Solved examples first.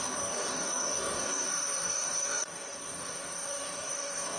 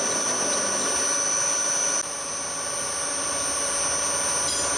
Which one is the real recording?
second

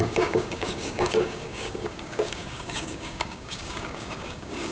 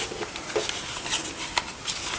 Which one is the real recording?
second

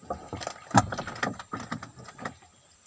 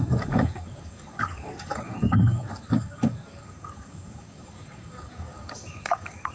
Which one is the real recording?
first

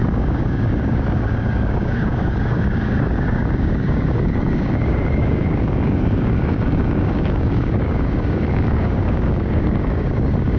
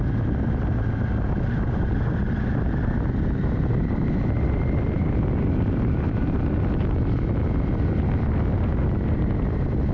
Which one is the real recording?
second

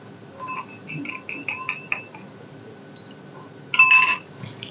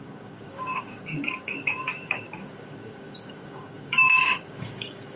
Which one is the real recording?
first